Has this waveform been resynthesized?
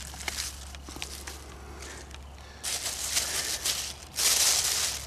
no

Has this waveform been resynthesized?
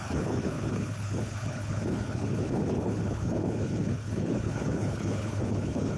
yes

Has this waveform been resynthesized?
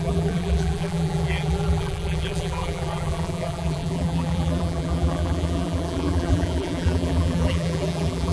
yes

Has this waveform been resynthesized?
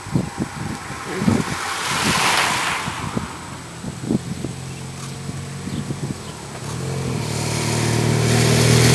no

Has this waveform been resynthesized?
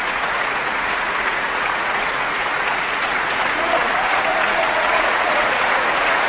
yes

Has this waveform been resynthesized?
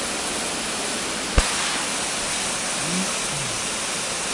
no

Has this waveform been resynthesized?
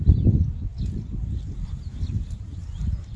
no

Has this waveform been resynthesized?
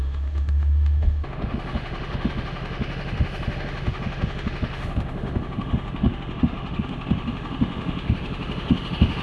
yes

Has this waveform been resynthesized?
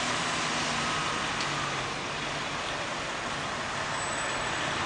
no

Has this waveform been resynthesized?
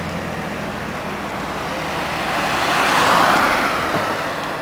no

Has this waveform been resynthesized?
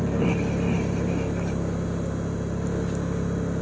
no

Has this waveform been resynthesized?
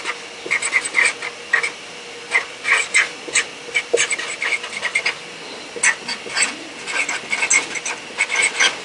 no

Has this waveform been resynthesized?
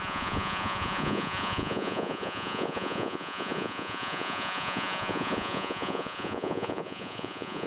yes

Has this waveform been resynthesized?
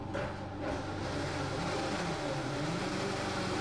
no